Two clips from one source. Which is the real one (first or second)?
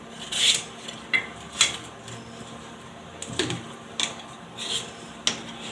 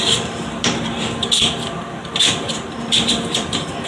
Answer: first